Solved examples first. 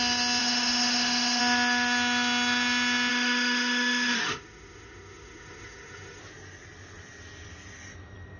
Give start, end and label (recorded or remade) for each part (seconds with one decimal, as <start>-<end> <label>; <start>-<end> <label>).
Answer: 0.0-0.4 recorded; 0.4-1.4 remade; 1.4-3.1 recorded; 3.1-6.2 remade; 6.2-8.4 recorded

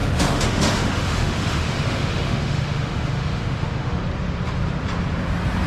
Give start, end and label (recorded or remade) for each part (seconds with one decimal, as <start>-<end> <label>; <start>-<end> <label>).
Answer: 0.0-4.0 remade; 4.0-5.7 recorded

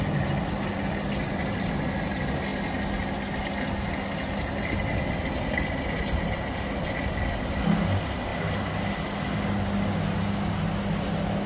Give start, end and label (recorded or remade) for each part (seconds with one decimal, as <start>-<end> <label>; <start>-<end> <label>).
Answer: 0.0-11.5 recorded

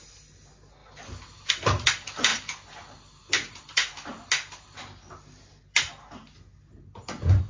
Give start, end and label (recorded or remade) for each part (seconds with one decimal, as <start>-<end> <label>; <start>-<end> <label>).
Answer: 0.0-7.5 recorded

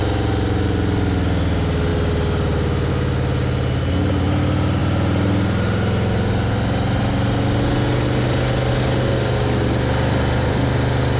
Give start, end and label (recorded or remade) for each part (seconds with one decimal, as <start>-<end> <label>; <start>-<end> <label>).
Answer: 0.0-11.2 recorded

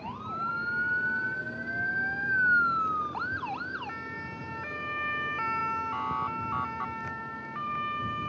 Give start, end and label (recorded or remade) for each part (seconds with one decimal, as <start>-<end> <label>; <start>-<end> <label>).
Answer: 0.0-8.3 recorded

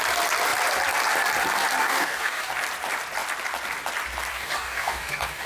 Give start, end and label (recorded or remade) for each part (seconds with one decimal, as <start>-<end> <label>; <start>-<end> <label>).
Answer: 0.0-1.8 recorded; 1.8-2.5 remade; 2.5-4.3 recorded; 4.3-5.5 remade

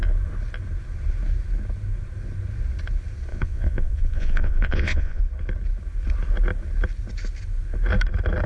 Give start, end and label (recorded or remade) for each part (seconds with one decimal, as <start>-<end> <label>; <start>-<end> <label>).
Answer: 0.0-3.3 recorded; 3.3-5.2 remade; 5.2-8.5 recorded